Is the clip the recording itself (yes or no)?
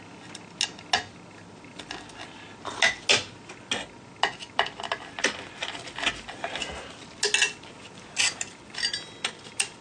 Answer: yes